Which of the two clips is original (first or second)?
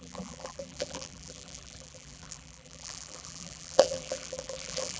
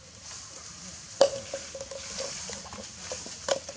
second